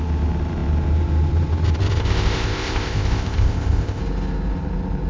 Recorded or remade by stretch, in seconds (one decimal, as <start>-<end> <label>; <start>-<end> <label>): 0.0-2.0 recorded; 2.0-4.0 remade; 4.0-5.1 recorded